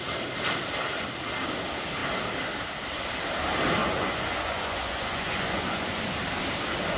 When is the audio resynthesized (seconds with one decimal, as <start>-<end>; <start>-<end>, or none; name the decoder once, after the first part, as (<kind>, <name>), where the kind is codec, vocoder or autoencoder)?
3.8-6.0 (vocoder, Vocos)